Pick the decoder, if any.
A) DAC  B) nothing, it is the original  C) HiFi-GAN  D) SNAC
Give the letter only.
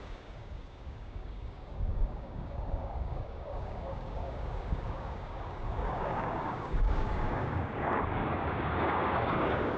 A